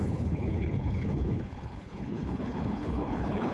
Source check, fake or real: fake